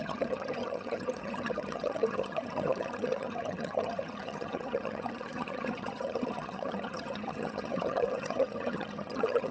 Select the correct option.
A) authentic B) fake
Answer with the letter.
B